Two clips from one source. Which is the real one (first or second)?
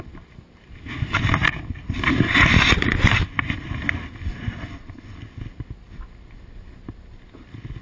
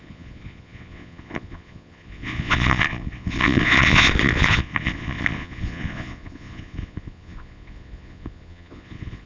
first